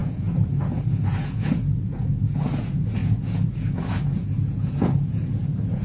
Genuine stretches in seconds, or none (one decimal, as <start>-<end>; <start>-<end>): none